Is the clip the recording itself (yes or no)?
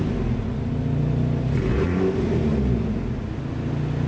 yes